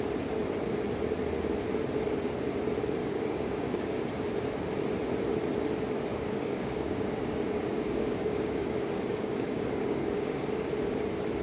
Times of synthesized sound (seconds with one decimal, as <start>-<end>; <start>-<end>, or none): 3.0-4.0; 6.1-10.7